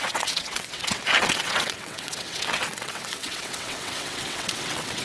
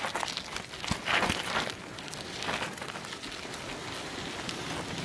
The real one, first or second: second